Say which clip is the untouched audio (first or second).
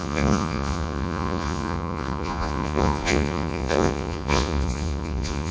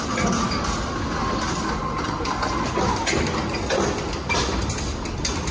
second